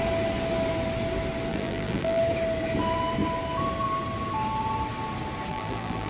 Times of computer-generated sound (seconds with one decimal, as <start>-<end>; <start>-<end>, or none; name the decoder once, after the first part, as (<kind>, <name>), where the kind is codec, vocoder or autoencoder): 1.5-2.2 (vocoder, BigVGAN v2); 5.5-6.1